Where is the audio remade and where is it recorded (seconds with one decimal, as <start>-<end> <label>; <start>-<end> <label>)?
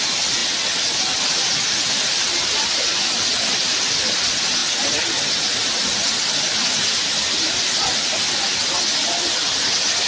0.0-10.1 recorded